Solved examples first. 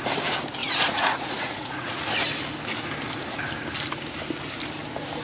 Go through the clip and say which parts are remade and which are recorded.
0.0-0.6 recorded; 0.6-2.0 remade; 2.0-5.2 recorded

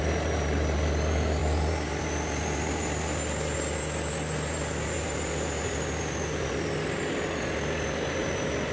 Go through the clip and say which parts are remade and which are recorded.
0.0-8.7 recorded

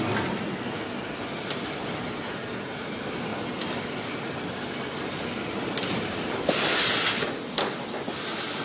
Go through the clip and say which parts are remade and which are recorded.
0.0-8.6 recorded

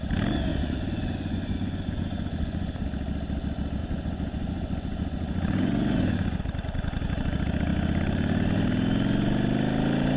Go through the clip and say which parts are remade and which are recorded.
0.0-0.5 recorded; 0.5-2.8 remade; 2.8-3.8 recorded; 3.8-6.4 remade; 6.4-10.2 recorded

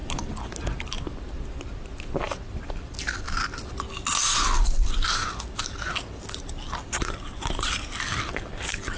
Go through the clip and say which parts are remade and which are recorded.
0.0-9.0 recorded

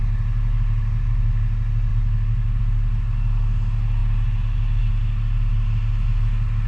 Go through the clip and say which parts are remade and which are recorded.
0.0-6.7 recorded

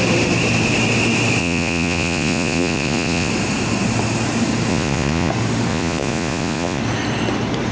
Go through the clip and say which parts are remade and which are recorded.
0.0-1.4 recorded; 1.4-3.3 remade; 3.3-4.7 recorded; 4.7-5.3 remade; 5.3-5.7 recorded; 5.7-6.8 remade; 6.8-7.7 recorded